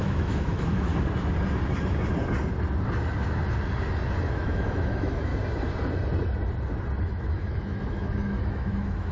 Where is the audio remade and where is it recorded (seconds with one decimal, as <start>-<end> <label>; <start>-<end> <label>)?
0.0-0.9 remade; 0.9-4.3 recorded; 4.3-5.3 remade; 5.3-7.0 recorded; 7.0-9.1 remade